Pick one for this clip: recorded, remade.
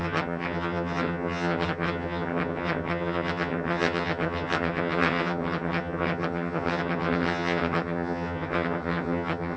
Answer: remade